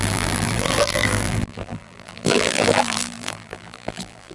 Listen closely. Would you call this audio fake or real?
fake